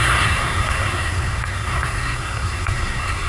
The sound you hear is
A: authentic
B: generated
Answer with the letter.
B